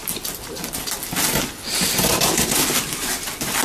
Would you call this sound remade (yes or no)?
no